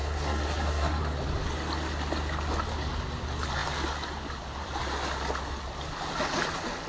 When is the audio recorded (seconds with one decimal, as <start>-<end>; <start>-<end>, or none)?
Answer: 1.0-6.9